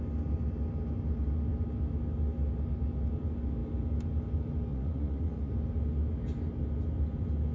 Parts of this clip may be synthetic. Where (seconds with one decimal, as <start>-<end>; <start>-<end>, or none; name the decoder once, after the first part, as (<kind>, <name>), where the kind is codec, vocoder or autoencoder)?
4.7-5.5 (vocoder, Vocos)